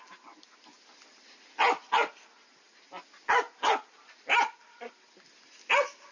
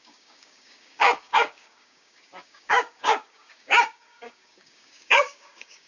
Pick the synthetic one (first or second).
second